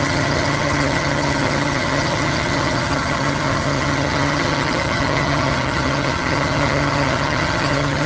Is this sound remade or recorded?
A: remade